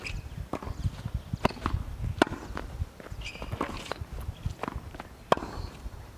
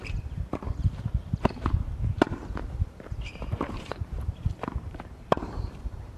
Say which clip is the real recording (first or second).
first